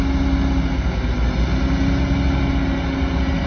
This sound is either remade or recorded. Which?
recorded